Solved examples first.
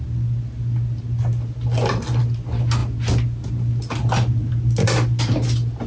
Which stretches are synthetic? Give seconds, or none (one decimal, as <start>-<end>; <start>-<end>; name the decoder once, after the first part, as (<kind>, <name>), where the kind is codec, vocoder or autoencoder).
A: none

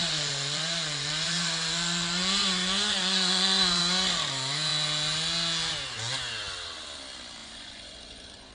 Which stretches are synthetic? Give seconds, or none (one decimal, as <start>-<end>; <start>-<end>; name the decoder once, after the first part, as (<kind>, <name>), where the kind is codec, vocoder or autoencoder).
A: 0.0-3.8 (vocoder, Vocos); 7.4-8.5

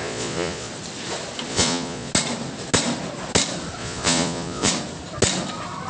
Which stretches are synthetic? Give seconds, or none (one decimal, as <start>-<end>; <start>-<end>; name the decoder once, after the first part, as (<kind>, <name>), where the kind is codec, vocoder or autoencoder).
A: 0.0-0.7 (vocoder, Vocos); 1.5-2.1; 3.8-4.7

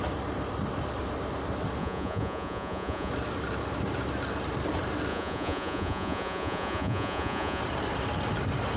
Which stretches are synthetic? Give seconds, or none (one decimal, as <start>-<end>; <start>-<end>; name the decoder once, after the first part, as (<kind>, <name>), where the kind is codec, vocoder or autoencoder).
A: 1.8-3.1 (vocoder, Vocos); 5.1-7.6

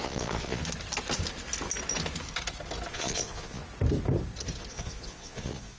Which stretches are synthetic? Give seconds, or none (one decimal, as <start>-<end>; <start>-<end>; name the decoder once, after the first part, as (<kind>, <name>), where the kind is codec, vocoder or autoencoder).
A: 0.0-0.6 (vocoder, Vocos); 2.9-3.6; 4.7-5.8

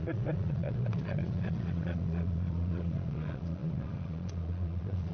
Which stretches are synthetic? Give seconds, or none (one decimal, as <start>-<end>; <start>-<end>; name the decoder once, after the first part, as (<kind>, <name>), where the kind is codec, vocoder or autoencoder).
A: 0.0-5.1 (vocoder, Vocos)